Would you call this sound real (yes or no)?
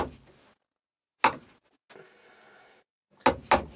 yes